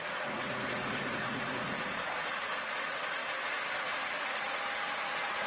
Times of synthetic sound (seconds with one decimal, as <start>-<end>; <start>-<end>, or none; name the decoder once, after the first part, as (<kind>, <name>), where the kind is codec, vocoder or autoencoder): 0.0-3.2 (vocoder, Vocos); 3.8-5.5